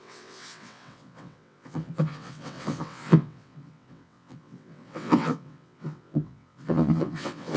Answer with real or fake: fake